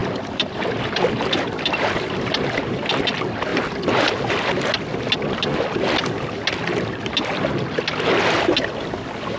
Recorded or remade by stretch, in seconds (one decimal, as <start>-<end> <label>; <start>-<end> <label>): 0.0-2.4 remade; 2.4-9.4 recorded